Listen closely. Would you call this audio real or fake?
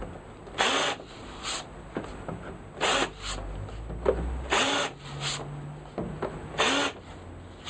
real